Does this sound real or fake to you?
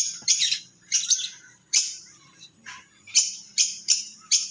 fake